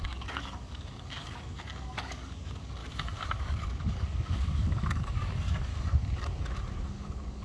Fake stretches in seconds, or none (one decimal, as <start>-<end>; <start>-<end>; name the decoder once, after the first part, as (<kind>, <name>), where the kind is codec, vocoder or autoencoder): 0.0-2.8 (codec, DAC); 3.4-5.7; 6.9-7.4